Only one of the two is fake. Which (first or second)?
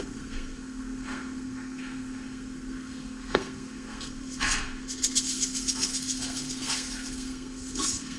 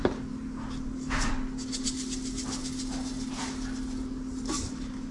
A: first